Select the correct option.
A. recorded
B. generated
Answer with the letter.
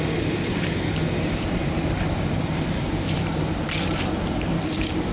B